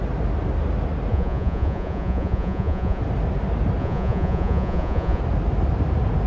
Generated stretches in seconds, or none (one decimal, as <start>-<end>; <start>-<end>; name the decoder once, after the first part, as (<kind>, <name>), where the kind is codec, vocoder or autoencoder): 1.1-3.0 (vocoder, Vocos); 3.8-5.2